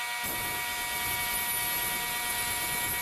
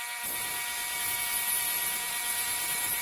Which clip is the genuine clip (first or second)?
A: first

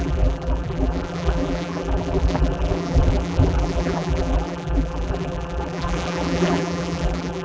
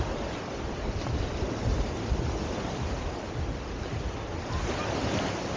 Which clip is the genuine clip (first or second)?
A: second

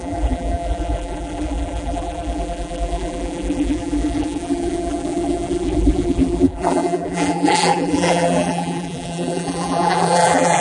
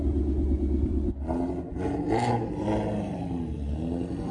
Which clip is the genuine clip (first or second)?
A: second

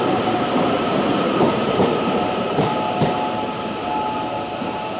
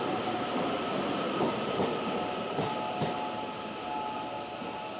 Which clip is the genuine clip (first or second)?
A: second